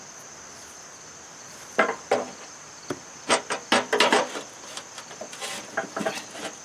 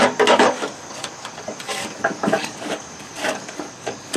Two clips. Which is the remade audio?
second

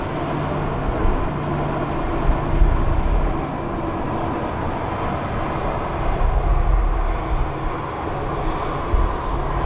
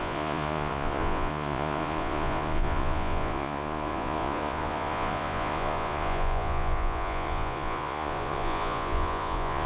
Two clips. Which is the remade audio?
second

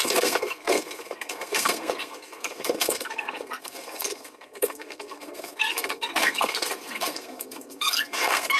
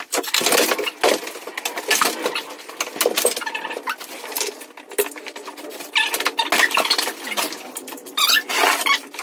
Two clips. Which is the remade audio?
first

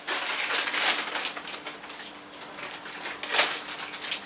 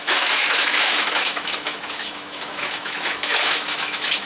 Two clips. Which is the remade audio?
second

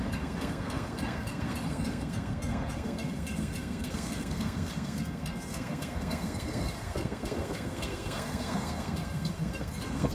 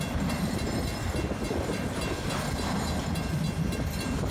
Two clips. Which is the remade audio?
first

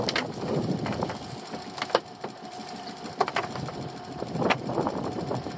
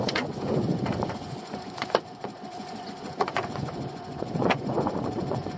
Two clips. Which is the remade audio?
second